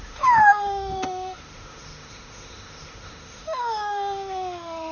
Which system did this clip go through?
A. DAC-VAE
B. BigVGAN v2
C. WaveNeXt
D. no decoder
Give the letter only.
A